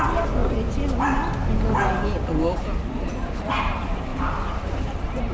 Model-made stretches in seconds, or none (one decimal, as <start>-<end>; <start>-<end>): 0.0-0.4; 3.1-4.1; 4.8-5.3